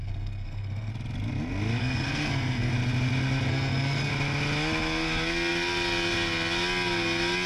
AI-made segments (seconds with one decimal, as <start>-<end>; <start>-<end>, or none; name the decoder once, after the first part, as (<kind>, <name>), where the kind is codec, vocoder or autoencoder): 0.0-0.9 (codec, SNAC); 1.8-2.7; 3.5-4.1